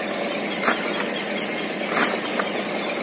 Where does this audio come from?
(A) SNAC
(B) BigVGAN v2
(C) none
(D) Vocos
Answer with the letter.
C